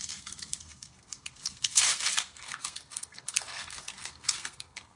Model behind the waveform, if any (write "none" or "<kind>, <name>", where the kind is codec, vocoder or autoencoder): codec, SNAC